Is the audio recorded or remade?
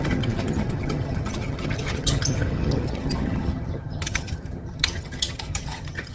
remade